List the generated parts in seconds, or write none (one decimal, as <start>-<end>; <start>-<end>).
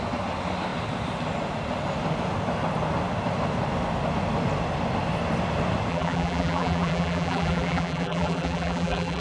5.9-9.2